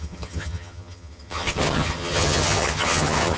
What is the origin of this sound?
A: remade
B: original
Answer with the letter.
A